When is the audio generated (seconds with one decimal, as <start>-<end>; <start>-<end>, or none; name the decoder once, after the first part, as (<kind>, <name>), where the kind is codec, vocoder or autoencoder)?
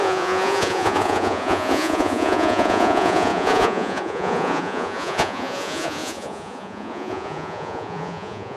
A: 0.0-8.6 (vocoder, Vocos)